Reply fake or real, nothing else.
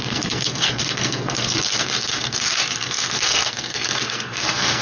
fake